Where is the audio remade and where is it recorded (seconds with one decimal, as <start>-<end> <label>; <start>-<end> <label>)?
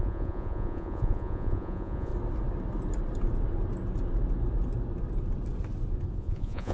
0.0-2.1 remade; 2.1-6.1 recorded; 6.1-6.7 remade